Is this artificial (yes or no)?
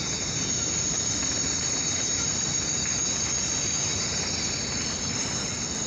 no